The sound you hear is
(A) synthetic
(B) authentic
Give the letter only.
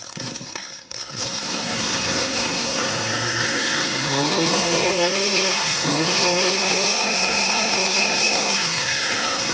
A